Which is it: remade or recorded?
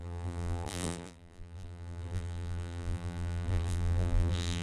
remade